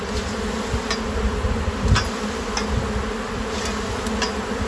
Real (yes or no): yes